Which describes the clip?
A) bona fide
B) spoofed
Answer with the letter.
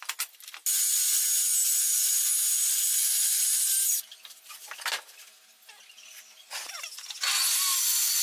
A